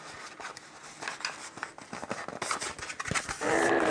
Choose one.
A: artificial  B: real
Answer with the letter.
B